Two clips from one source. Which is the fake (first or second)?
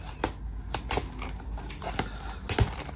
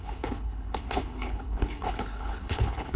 second